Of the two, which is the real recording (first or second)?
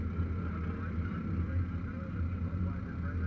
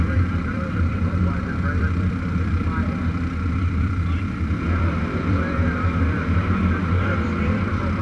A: first